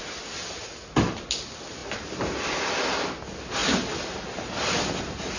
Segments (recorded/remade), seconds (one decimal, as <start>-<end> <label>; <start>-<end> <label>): 0.0-5.4 recorded